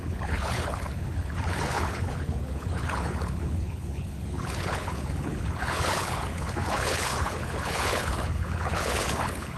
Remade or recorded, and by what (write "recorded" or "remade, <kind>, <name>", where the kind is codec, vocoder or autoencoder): remade, codec, HILCodec